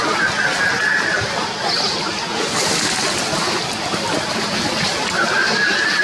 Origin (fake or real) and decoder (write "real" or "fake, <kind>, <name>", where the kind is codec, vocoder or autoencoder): real